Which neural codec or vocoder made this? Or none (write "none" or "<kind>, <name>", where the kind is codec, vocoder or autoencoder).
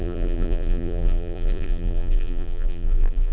vocoder, BigVGAN v2